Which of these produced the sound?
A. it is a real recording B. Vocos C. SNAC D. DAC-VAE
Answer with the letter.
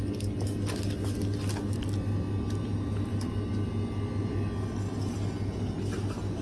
A